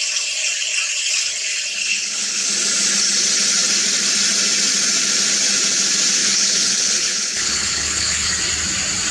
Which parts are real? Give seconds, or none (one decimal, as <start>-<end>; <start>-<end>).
0.0-1.9; 2.5-6.2; 8.3-9.1